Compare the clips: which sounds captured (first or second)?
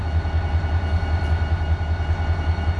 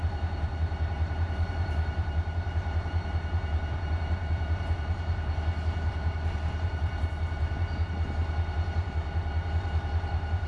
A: first